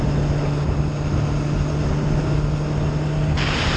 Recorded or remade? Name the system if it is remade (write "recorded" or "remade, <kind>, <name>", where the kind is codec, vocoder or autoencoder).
recorded